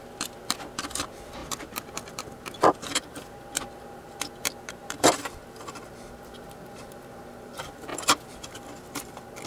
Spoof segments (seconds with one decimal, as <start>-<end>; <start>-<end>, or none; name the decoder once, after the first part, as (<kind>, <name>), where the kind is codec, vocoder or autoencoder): 0.0-9.5 (vocoder, BigVGAN v2)